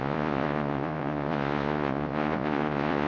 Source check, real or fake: fake